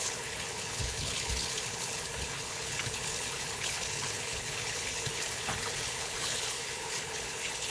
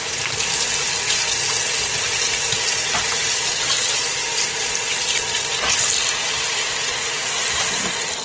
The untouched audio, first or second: second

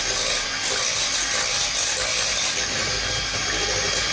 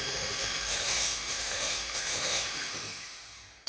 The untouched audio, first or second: first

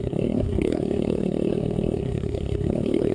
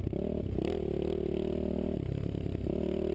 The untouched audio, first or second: second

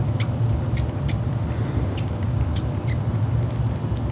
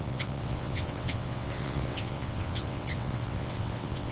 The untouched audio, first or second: first